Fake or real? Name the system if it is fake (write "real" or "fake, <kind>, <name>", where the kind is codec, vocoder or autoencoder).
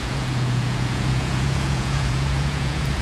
fake, vocoder, Vocos